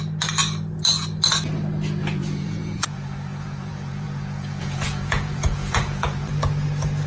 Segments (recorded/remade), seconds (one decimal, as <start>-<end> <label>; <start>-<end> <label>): 0.0-2.0 recorded; 2.0-6.3 remade; 6.3-7.1 recorded